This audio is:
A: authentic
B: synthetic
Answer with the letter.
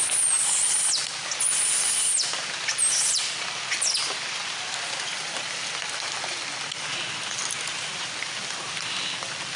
A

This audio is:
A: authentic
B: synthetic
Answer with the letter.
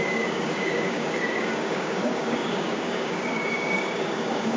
B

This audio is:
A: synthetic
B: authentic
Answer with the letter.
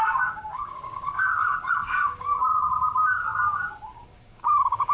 A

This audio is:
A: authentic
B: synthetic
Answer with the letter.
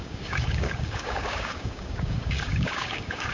B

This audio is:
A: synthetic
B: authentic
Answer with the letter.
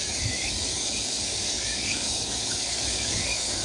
A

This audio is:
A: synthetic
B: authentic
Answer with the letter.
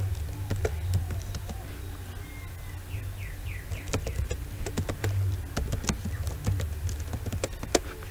B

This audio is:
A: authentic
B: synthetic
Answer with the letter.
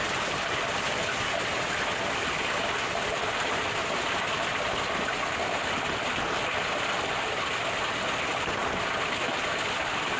A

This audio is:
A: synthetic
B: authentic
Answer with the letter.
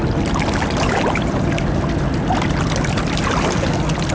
B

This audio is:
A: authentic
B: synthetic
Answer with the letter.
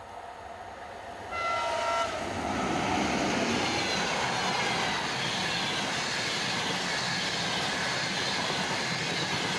A